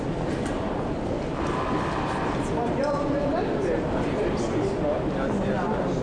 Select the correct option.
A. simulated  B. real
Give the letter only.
B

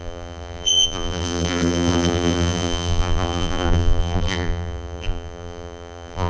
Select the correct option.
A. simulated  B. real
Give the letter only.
A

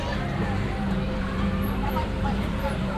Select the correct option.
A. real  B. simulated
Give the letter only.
B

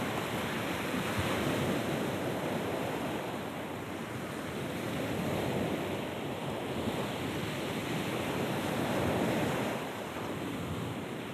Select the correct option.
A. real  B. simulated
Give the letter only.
A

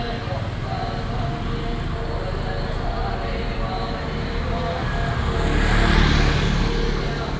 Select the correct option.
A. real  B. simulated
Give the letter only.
A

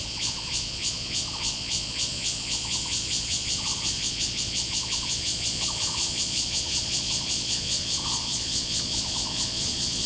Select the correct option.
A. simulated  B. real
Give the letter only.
A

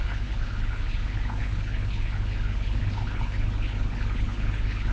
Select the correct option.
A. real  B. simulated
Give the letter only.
B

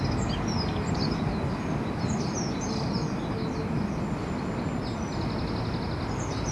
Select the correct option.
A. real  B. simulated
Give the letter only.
A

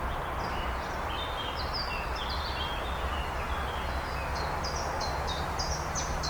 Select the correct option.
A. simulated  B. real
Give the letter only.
B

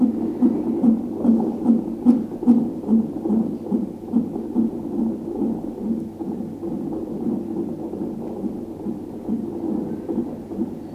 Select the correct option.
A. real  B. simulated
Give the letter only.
A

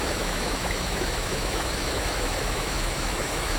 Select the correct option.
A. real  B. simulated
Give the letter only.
B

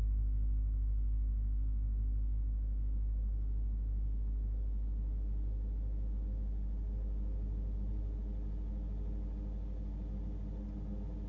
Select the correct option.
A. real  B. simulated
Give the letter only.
A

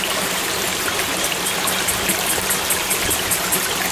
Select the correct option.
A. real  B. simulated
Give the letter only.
A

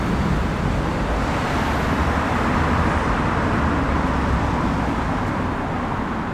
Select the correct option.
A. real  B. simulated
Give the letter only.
A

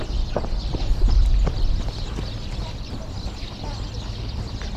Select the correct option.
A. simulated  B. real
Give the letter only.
A